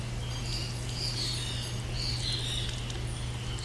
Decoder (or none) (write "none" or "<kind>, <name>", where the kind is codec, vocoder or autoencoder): none